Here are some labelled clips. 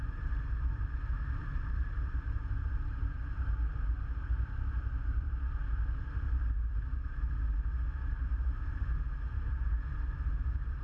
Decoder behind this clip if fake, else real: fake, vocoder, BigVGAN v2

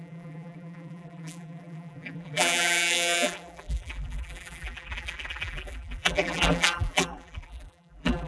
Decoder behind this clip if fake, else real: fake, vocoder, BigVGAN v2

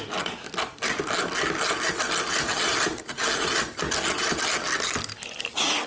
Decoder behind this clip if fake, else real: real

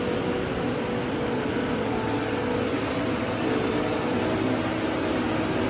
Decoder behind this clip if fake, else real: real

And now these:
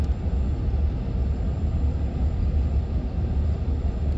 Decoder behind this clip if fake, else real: real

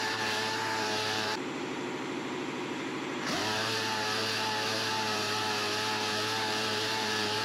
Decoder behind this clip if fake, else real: fake, vocoder, BigVGAN v2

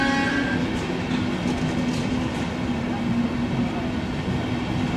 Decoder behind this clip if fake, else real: real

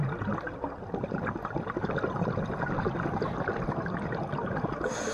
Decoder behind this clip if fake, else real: real